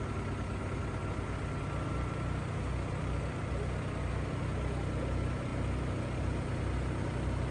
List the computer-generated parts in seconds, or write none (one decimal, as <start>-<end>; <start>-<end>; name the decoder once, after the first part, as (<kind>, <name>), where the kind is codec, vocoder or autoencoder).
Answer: none